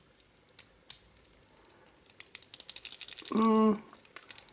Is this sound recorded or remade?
recorded